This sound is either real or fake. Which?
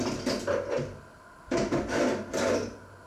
real